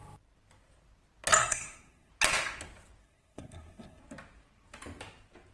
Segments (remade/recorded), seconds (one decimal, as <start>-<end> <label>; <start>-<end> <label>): 0.0-1.4 recorded; 1.4-2.1 remade; 2.1-3.0 recorded; 3.0-4.0 remade; 4.0-5.5 recorded